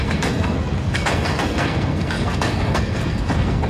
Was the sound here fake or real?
fake